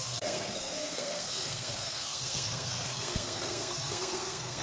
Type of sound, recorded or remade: remade